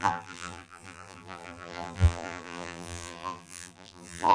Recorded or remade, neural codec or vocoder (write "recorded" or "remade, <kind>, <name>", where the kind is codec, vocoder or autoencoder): remade, vocoder, BigVGAN v2